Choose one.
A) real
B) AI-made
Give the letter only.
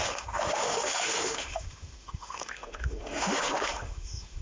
B